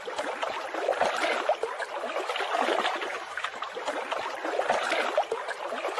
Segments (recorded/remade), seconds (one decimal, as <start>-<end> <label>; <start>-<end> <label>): 0.0-3.1 recorded; 3.1-3.7 remade; 3.7-6.0 recorded

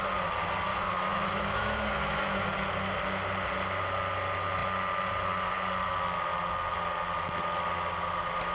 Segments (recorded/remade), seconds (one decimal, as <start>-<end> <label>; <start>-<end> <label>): 0.0-0.7 recorded; 0.7-2.4 remade; 2.4-8.5 recorded

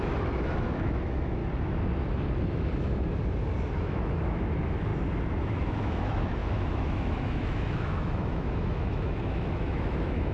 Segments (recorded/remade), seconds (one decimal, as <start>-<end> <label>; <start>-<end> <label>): 0.0-1.4 remade; 1.4-3.8 recorded; 3.8-4.9 remade; 4.9-5.4 recorded; 5.4-10.3 remade

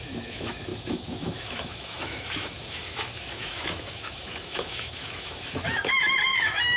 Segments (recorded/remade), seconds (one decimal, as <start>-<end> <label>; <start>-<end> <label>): 0.0-6.8 remade

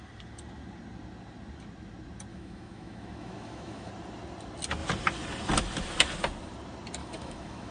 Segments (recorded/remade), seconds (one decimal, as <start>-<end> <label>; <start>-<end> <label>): 0.0-2.3 recorded; 2.3-3.9 remade; 3.9-7.0 recorded; 7.0-7.7 remade

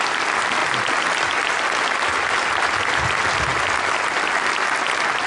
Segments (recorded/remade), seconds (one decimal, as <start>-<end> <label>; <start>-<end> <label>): 0.0-5.3 recorded